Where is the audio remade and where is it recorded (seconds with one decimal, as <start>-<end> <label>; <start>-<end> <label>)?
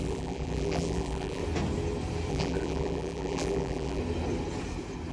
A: 0.0-1.4 remade; 1.4-2.3 recorded; 2.3-4.0 remade; 4.0-5.1 recorded